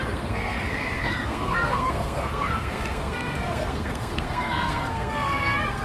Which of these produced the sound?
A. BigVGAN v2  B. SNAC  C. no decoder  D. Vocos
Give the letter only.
B